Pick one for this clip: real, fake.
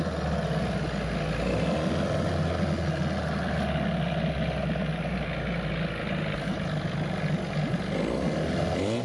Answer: real